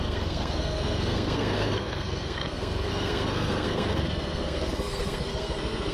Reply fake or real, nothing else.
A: fake